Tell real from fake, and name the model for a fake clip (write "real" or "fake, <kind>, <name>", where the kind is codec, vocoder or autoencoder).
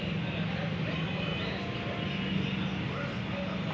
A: real